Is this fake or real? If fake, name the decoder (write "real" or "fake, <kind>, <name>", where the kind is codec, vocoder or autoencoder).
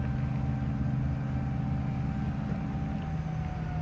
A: real